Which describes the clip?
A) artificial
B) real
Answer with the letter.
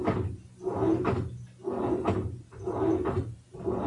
B